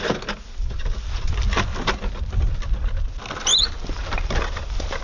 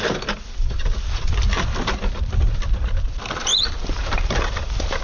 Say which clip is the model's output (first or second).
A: second